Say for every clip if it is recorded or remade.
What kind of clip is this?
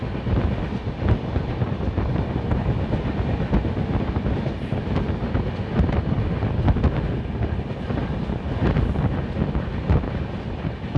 recorded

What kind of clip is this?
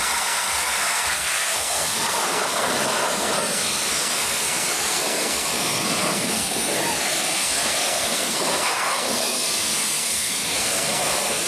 remade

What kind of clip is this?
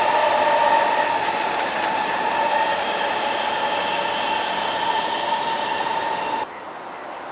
recorded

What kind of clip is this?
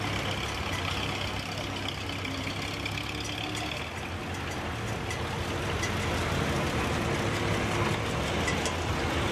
recorded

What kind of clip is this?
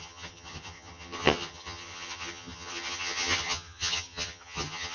remade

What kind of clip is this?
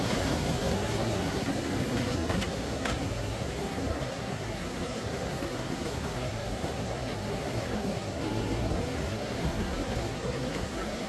remade